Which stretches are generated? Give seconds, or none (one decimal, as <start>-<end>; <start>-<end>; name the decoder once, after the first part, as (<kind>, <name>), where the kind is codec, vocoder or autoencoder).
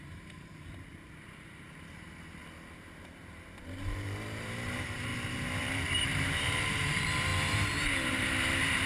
0.0-2.4 (vocoder, BigVGAN v2); 3.0-5.1; 5.6-7.3; 8.1-8.9